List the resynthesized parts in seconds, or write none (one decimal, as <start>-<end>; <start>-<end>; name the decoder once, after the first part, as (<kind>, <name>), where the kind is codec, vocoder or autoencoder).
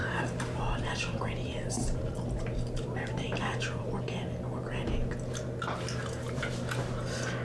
0.0-3.9 (vocoder, BigVGAN v2)